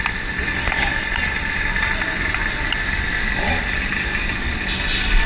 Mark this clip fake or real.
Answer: real